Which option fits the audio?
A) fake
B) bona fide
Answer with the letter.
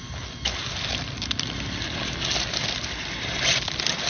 B